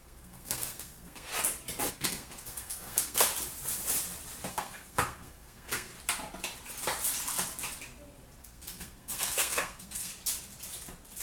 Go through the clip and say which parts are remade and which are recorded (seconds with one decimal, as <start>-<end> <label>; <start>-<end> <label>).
0.0-1.3 remade; 1.3-1.9 recorded; 1.9-3.3 remade; 3.3-4.5 recorded; 4.5-5.9 remade; 5.9-8.4 recorded; 8.4-10.1 remade; 10.1-11.2 recorded